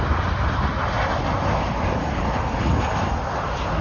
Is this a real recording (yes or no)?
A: yes